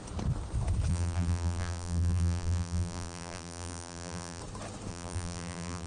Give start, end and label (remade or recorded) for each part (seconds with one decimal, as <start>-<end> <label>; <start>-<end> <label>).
0.0-0.9 recorded; 0.9-4.4 remade; 4.4-4.9 recorded; 4.9-5.9 remade

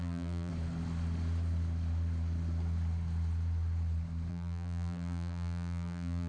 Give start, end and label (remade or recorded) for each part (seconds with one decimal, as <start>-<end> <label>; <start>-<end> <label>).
0.0-0.5 remade; 0.5-4.3 recorded; 4.3-6.3 remade

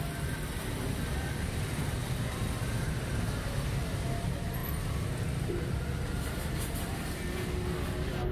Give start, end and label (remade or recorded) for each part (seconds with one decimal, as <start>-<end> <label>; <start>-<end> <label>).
0.0-2.0 recorded; 2.0-2.6 remade; 2.6-8.3 recorded

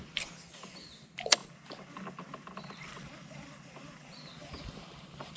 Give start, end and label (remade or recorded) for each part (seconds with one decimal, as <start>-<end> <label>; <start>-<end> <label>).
0.0-5.4 recorded

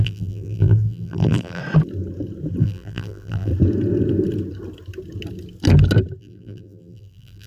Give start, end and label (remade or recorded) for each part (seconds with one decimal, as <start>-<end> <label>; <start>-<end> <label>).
0.0-1.6 remade; 1.6-2.6 recorded; 2.6-3.5 remade; 3.5-6.2 recorded; 6.2-7.5 remade

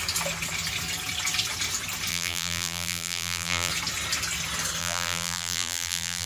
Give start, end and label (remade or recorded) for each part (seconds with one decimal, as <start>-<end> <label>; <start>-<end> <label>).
0.0-2.1 recorded; 2.1-3.7 remade; 3.7-4.8 recorded; 4.8-6.3 remade